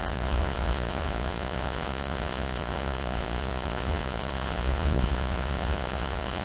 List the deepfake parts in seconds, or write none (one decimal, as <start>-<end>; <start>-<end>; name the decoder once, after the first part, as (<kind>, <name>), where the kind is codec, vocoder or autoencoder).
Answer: 0.0-6.4 (vocoder, Vocos)